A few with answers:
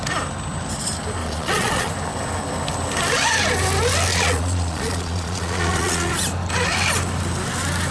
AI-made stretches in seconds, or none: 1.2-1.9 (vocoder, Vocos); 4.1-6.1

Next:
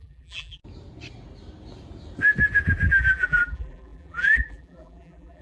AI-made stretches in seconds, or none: 0.0-0.6 (vocoder, BigVGAN v2); 2.9-5.4

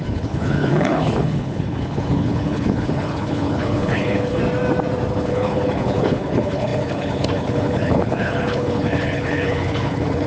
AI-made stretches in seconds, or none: 0.0-4.4 (codec, HILCodec); 5.1-10.3

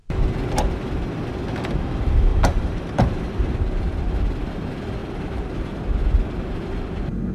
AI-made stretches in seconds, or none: 2.3-4.1 (vocoder, BigVGAN v2); 5.0-5.8

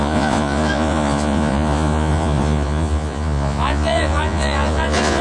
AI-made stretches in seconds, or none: 0.0-5.2 (vocoder, Vocos)

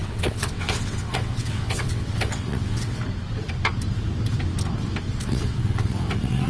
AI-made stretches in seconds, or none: 0.0-3.0 (vocoder, WaveNeXt); 5.2-6.5

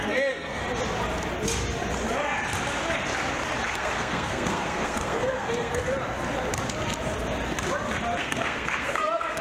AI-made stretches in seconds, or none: 0.0-0.6 (codec, SNAC); 3.7-5.8; 8.2-9.4